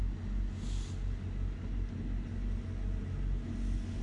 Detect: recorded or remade recorded